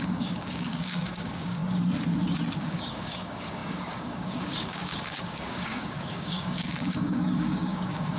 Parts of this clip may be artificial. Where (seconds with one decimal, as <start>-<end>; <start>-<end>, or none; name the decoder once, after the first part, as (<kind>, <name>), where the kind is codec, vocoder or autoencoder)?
0.0-1.6 (codec, DAC); 2.6-8.2